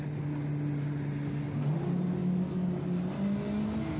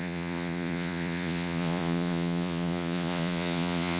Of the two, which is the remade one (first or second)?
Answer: second